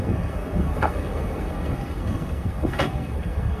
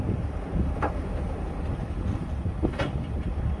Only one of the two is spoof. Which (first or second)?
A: first